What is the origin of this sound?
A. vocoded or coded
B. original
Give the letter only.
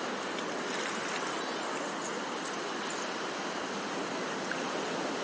B